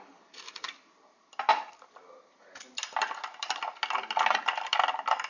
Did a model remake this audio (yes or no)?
no